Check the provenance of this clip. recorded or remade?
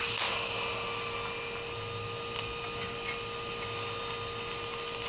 recorded